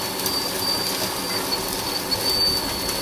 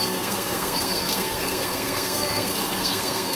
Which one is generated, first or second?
second